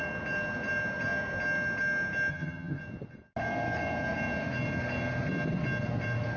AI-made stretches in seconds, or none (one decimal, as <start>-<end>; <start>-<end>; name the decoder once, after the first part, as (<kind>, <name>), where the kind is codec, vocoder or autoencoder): 2.3-2.8 (vocoder, HiFi-GAN)